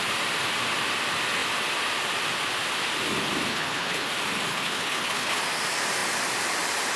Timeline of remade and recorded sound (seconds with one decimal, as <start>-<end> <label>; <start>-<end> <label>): 0.0-3.5 recorded; 3.5-4.1 remade; 4.1-4.5 recorded; 4.5-5.4 remade; 5.4-7.0 recorded